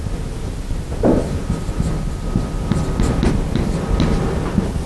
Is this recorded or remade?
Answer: recorded